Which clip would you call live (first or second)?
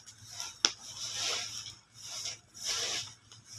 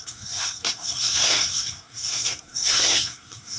first